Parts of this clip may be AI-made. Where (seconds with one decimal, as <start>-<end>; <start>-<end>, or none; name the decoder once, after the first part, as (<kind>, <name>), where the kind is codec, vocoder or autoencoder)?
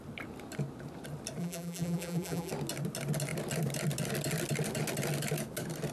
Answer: 1.4-2.5 (vocoder, BigVGAN v2)